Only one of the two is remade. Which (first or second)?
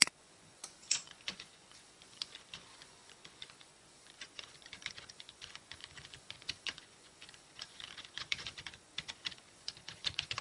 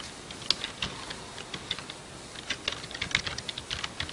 first